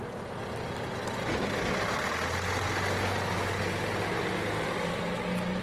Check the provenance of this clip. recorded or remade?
recorded